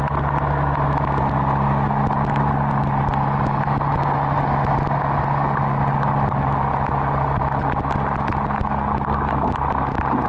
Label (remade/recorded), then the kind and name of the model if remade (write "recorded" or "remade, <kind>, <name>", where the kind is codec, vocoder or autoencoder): recorded